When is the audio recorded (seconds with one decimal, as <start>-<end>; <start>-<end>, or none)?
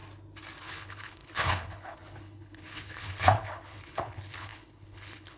0.0-0.6